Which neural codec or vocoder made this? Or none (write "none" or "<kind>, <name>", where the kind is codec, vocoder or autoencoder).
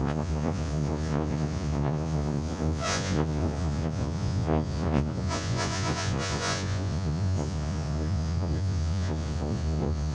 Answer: vocoder, Vocos